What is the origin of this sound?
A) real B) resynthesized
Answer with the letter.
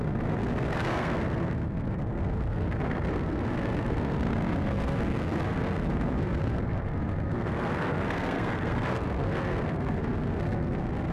B